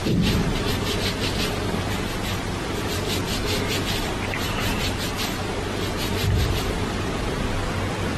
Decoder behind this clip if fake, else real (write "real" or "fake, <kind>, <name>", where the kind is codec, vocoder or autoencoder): real